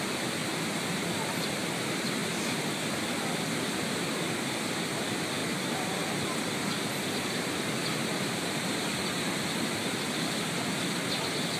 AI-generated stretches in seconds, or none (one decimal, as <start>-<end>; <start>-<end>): 0.0-0.4; 1.4-2.2; 2.7-5.4; 9.6-11.6